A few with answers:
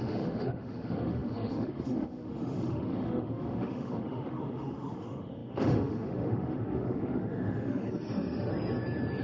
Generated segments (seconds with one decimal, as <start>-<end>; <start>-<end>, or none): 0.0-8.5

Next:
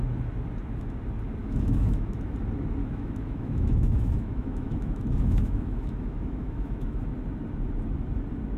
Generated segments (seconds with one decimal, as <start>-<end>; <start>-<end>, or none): 1.4-2.3; 2.8-7.1

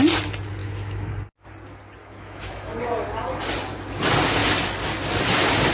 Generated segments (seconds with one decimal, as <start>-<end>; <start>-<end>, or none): 0.6-1.1; 2.0-2.8

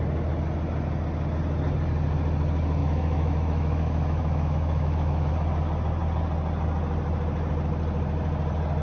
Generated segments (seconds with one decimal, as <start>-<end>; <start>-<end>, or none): 2.8-5.3